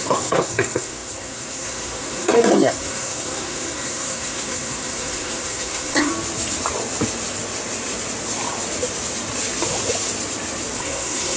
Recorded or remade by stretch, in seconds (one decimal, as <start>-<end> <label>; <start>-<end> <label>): 0.0-6.1 remade; 6.1-10.8 recorded; 10.8-11.4 remade